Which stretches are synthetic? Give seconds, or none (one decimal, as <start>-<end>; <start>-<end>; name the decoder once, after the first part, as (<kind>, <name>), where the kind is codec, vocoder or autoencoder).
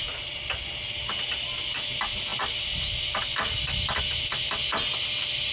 none